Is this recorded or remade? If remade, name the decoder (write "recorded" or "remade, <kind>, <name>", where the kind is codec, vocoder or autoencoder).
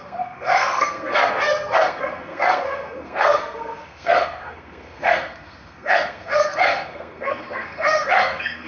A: remade, codec, SNAC